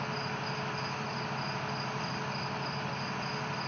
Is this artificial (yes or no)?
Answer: no